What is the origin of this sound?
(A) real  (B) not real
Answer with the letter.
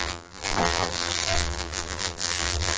B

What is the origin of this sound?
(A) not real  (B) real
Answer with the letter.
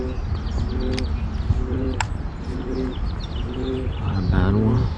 A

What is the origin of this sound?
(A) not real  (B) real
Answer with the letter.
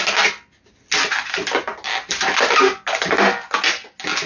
B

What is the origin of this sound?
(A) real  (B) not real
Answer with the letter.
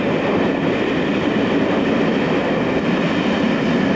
A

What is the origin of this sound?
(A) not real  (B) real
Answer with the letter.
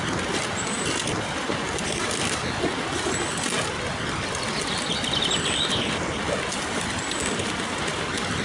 B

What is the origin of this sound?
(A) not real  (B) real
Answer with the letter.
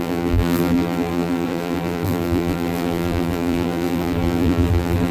A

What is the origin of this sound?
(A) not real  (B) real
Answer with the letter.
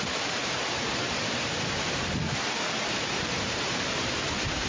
A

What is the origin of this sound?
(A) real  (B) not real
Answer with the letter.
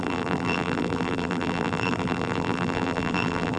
B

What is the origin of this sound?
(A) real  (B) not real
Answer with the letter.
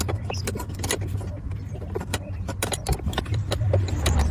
B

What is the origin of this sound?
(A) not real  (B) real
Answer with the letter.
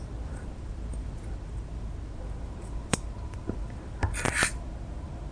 A